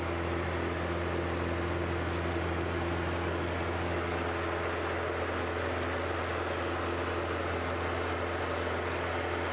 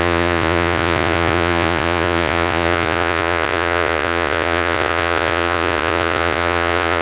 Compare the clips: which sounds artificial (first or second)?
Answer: second